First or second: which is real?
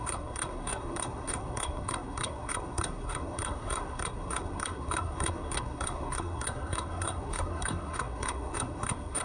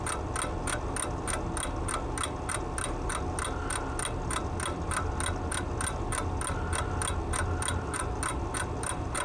second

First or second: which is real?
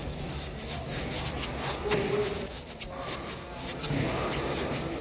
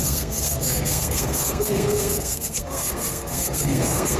first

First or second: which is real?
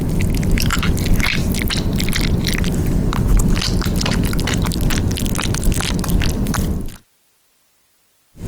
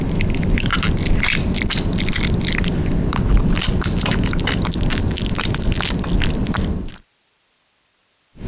first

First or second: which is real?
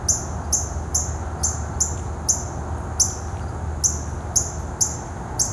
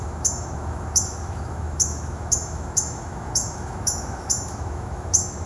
first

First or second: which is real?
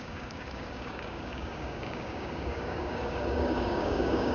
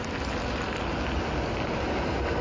second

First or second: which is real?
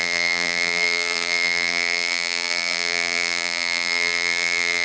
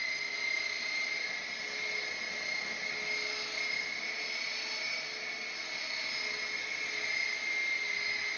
second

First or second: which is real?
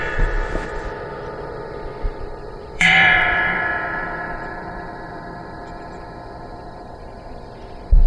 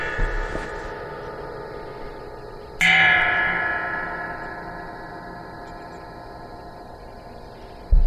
second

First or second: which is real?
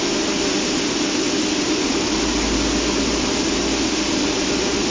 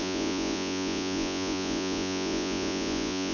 first